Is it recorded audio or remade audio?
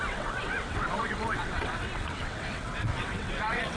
remade